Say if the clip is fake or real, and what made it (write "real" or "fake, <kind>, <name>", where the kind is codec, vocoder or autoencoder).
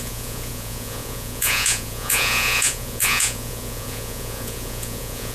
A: fake, vocoder, Vocos